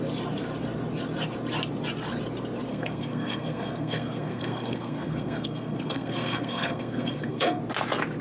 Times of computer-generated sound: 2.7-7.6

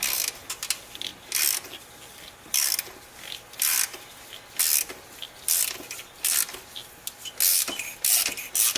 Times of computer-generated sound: 7.5-8.1

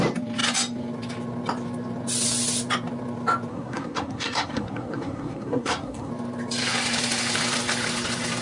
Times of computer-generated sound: 3.5-6.1

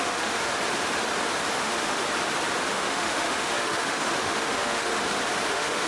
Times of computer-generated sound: 0.0-0.5; 1.6-2.0; 2.7-4.9; 5.5-5.9

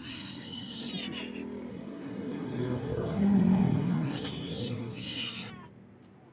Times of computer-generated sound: 0.0-0.9; 1.7-5.5